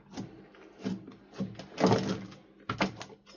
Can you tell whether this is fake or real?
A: real